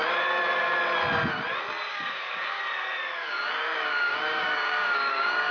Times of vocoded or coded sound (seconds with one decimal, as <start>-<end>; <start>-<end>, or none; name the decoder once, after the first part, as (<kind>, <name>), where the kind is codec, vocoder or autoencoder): 1.9-2.6 (codec, DAC); 3.1-5.5